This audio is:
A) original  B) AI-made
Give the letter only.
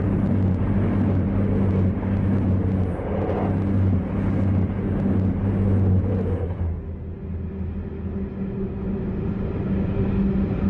A